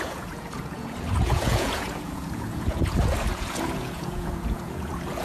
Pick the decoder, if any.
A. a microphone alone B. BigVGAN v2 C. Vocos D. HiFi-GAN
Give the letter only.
C